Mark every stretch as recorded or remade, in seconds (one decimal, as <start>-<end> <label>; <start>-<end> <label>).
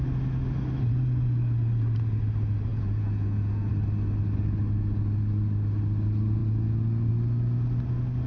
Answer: 0.0-2.7 recorded; 2.7-3.7 remade; 3.7-8.3 recorded